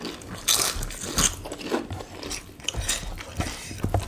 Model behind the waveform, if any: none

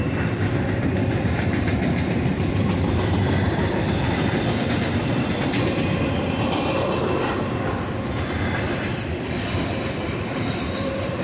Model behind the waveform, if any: vocoder, BigVGAN v2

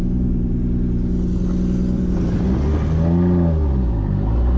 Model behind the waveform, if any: none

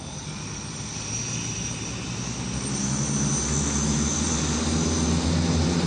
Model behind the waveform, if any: none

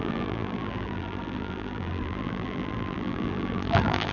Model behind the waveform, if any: vocoder, BigVGAN v2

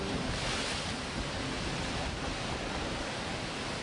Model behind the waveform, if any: vocoder, BigVGAN v2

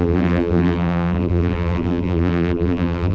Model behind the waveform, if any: vocoder, BigVGAN v2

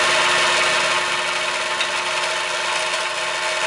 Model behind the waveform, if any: none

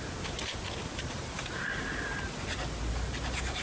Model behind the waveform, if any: none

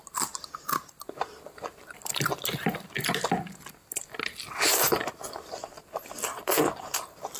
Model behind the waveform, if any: none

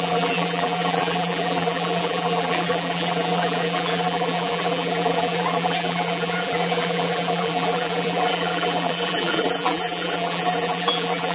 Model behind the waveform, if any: vocoder, BigVGAN v2